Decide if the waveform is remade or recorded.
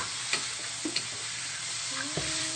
remade